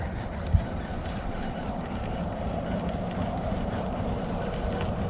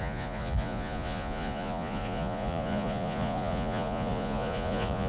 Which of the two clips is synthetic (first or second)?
second